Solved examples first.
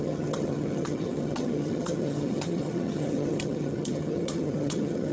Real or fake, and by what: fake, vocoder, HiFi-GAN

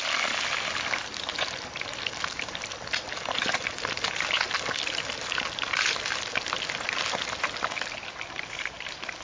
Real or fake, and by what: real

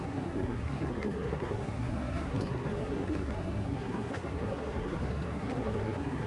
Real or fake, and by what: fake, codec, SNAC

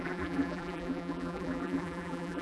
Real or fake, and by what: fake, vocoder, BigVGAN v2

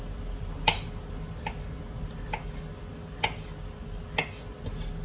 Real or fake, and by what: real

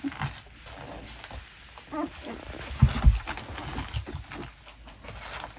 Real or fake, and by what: real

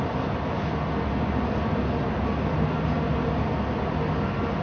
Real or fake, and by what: real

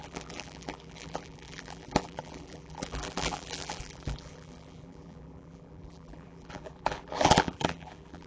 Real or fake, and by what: fake, vocoder, BigVGAN v2